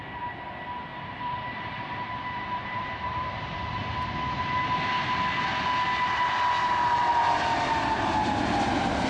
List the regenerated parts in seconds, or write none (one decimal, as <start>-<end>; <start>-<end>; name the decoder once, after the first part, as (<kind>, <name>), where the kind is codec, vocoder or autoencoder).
0.9-3.6 (vocoder, BigVGAN v2); 6.6-7.3